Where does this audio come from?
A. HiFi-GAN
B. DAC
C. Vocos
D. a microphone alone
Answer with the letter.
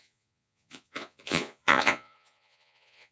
C